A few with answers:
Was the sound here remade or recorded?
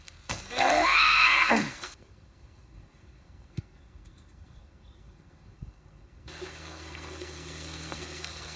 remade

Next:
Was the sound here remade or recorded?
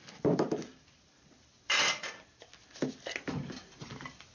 recorded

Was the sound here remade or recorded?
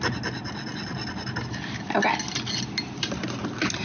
recorded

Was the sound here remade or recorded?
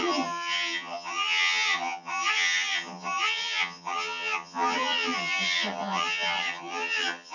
remade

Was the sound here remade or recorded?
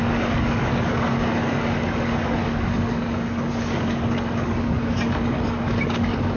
remade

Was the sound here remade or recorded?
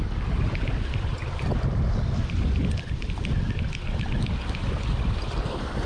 recorded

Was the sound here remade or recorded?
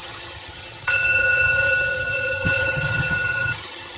remade